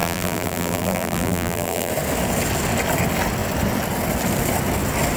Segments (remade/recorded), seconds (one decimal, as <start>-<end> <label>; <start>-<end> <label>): 0.0-1.9 remade; 1.9-5.2 recorded